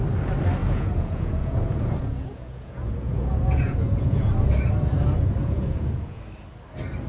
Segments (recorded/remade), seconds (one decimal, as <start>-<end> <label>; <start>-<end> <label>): 0.0-0.6 recorded; 0.6-4.3 remade; 4.3-5.4 recorded; 5.4-6.2 remade; 6.2-7.1 recorded